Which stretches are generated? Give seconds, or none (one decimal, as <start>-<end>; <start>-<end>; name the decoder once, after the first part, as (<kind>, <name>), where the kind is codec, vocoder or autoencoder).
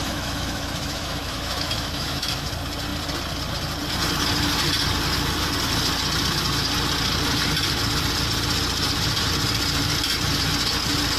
0.0-2.5 (autoencoder, DAC-VAE)